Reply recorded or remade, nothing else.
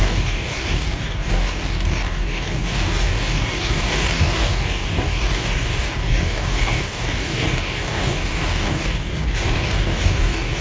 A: remade